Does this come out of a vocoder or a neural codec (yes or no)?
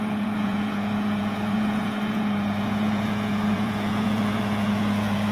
yes